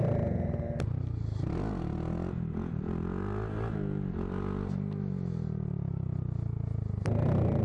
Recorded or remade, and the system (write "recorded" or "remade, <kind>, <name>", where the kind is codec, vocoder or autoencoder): recorded